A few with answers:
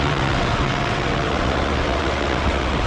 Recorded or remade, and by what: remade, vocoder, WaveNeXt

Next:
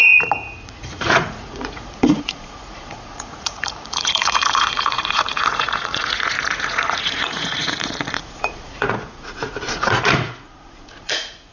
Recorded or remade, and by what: remade, vocoder, Vocos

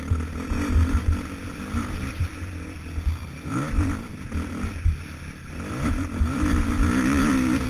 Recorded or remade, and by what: recorded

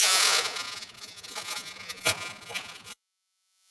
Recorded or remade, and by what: remade, vocoder, Vocos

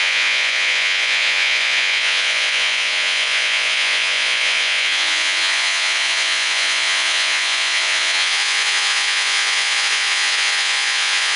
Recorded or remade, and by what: remade, vocoder, Vocos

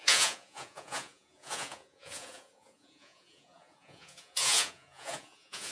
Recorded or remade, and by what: remade, vocoder, Vocos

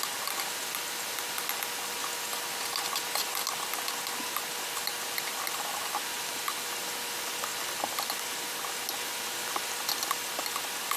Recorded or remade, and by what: recorded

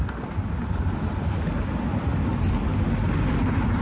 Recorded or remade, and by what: recorded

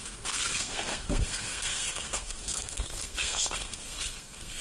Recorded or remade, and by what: remade, codec, SNAC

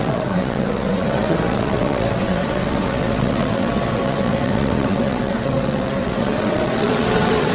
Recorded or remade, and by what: remade, vocoder, WaveNeXt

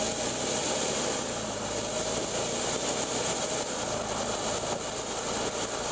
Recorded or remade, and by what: recorded